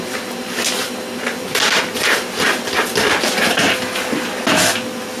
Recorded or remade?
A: recorded